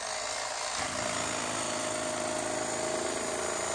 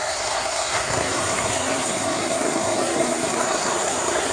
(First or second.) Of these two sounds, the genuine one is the first